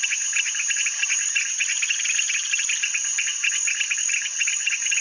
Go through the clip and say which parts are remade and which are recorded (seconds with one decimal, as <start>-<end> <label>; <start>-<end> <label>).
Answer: 0.0-5.0 recorded